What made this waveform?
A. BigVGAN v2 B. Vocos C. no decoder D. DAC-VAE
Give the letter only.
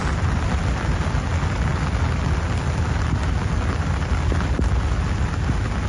C